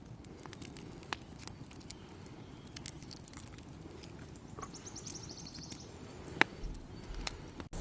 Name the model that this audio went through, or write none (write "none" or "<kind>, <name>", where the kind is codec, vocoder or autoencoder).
none